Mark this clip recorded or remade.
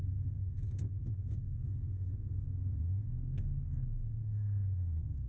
remade